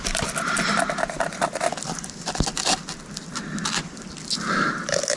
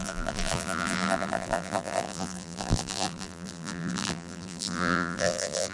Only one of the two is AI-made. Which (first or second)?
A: second